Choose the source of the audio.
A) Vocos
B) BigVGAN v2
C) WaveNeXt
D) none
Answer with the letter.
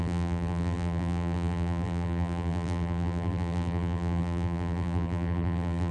B